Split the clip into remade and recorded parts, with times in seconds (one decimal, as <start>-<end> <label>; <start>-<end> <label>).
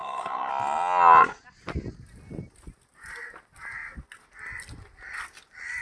0.0-0.5 remade; 0.5-5.8 recorded